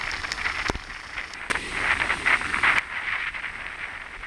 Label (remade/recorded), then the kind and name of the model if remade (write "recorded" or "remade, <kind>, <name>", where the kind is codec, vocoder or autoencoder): recorded